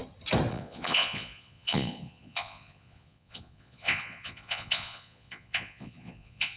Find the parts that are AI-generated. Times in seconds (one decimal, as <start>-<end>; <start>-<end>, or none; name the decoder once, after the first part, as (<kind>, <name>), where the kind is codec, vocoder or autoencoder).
0.5-6.6 (vocoder, Vocos)